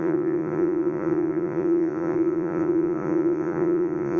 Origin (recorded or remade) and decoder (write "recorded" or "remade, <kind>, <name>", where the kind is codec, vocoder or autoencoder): remade, vocoder, Vocos